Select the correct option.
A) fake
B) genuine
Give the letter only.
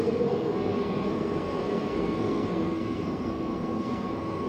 A